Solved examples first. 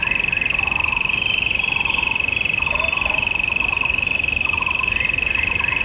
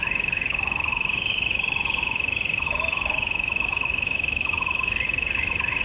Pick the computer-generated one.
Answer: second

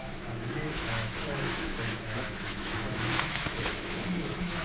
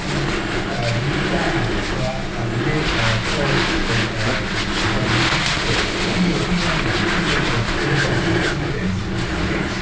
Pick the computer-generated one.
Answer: first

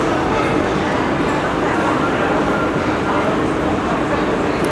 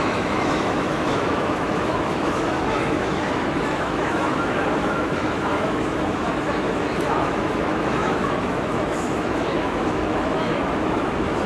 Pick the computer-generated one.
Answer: second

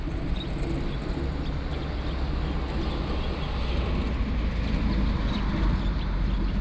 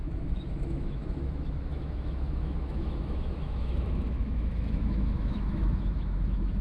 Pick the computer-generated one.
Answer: second